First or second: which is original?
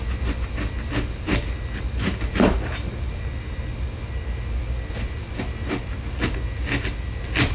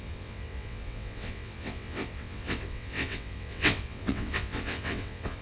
first